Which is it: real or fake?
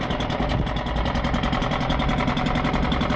real